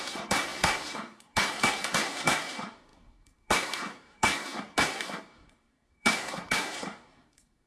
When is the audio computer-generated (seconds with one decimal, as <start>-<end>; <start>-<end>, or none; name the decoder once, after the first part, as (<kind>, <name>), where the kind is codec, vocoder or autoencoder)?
0.0-7.7 (codec, SNAC)